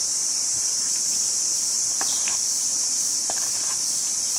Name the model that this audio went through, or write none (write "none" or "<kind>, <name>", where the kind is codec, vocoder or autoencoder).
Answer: vocoder, BigVGAN v2